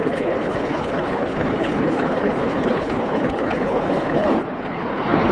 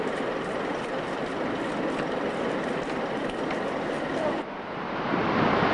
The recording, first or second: second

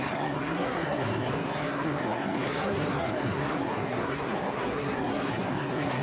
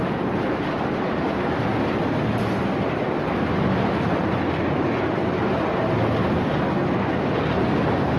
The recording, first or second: second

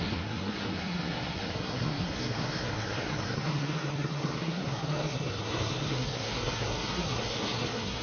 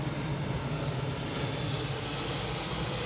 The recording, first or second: second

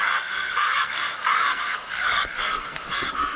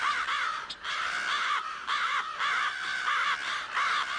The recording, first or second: second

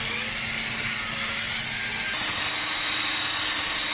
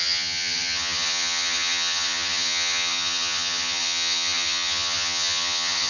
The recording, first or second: first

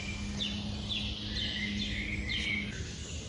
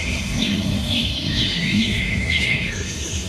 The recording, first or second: first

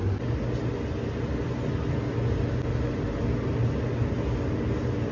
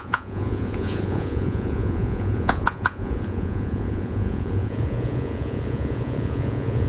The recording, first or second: first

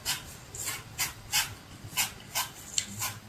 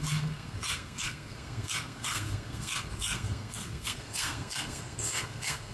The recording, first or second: first